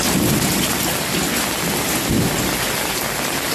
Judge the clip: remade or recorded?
recorded